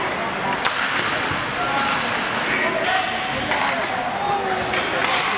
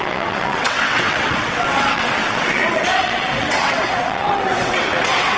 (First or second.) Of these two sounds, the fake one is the second